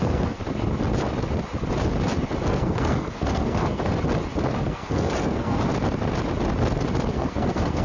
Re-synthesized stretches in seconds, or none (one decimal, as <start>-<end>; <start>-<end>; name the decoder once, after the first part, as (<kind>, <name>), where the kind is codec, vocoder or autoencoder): 0.0-0.4 (codec, SNAC); 2.5-3.9; 4.6-5.7; 7.1-7.8